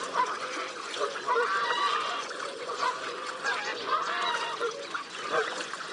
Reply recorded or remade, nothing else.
remade